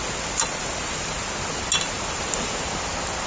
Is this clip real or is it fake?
real